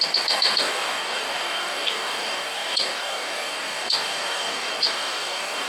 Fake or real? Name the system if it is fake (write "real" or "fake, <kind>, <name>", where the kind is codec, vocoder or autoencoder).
fake, codec, DAC